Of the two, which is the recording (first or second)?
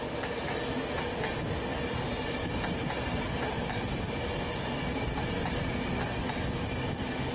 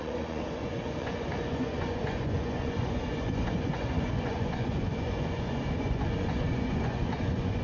first